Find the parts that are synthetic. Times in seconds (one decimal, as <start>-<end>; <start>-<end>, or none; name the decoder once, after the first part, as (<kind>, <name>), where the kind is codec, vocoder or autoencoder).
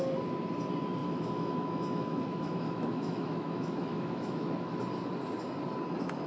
1.0-4.8 (autoencoder, DAC-VAE)